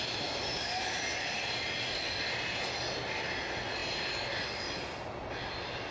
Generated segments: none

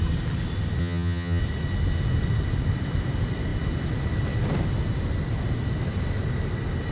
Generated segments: 0.8-1.4 (vocoder, HiFi-GAN)

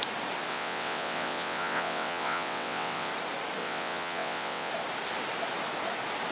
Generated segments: 0.5-3.1 (vocoder, WaveNeXt); 3.6-4.7

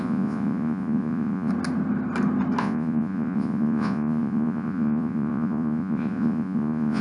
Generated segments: 0.0-1.5 (vocoder, Vocos); 2.6-7.0

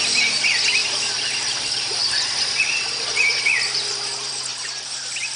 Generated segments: 0.8-2.8 (vocoder, BigVGAN v2); 4.5-5.0

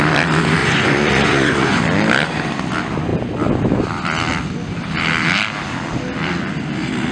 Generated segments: 0.6-1.8 (vocoder, Vocos)

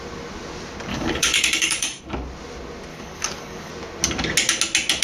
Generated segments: 0.9-2.0 (codec, DAC); 2.9-3.7

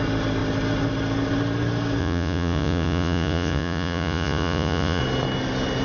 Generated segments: 2.0-5.0 (vocoder, Vocos)